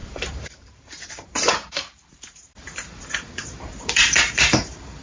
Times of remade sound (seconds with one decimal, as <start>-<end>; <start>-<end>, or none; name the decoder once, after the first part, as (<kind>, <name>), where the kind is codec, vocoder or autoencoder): 0.0-5.0 (vocoder, BigVGAN v2)